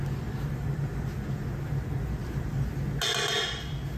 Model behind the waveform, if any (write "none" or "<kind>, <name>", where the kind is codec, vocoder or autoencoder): none